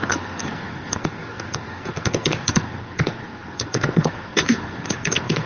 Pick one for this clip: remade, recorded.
remade